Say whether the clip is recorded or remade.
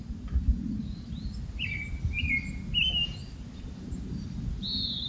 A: recorded